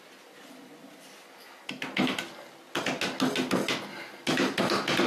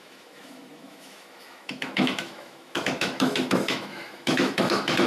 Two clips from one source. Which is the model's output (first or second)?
second